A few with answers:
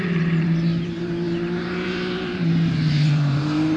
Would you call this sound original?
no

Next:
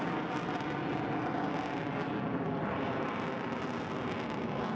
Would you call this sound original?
yes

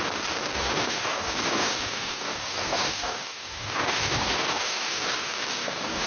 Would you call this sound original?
no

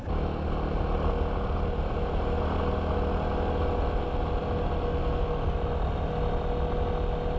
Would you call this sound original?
yes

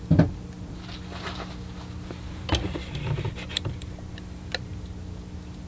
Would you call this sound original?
yes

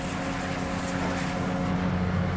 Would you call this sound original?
yes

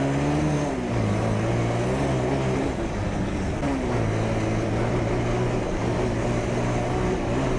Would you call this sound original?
yes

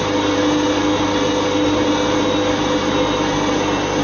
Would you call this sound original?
yes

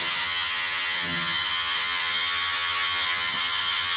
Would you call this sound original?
no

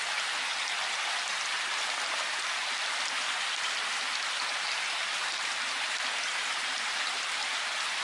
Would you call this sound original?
yes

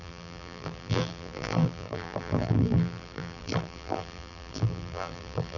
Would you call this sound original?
no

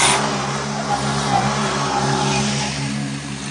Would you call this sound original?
yes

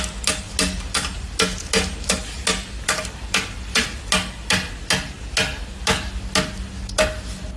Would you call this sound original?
yes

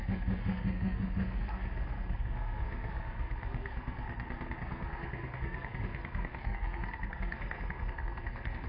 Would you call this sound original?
no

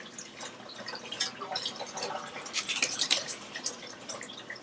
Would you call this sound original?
no